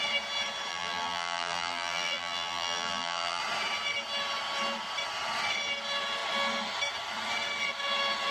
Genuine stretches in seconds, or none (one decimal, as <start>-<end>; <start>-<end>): 0.0-0.7; 3.4-8.3